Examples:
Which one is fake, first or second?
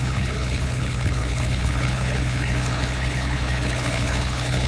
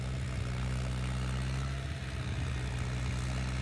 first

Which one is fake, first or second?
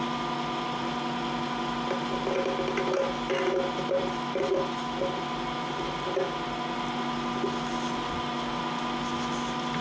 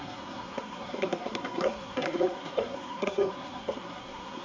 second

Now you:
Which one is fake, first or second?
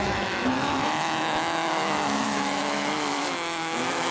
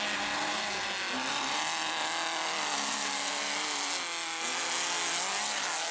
first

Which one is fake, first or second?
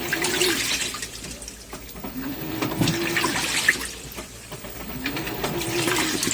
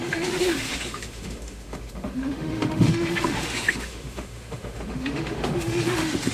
second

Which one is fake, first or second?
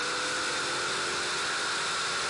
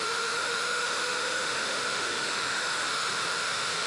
second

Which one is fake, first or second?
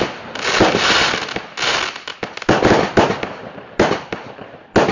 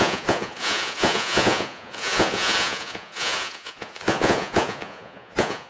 second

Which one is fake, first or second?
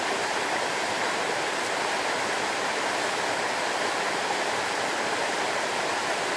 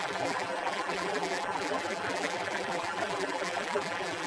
second